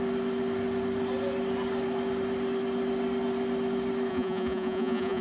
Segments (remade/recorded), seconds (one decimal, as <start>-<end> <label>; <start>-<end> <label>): 0.0-4.1 recorded; 4.1-5.2 remade